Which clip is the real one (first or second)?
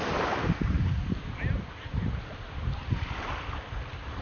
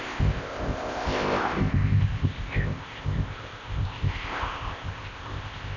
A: first